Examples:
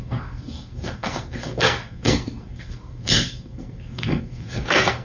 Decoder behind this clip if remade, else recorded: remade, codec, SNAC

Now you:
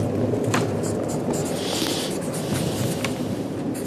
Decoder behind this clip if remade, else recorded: recorded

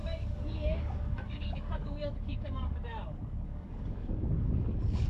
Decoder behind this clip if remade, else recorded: remade, codec, DAC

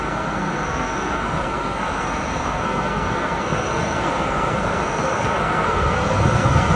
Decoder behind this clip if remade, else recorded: remade, codec, SNAC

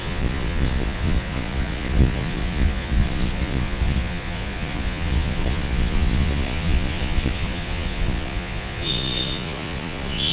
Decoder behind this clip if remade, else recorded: remade, vocoder, Vocos